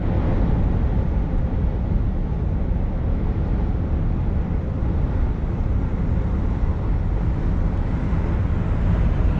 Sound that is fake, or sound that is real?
real